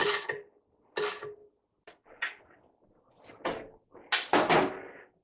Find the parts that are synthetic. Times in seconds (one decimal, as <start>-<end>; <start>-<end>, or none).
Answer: none